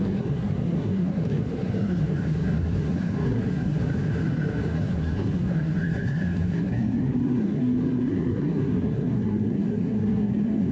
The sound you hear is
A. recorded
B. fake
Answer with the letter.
B